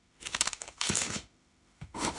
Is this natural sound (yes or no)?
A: no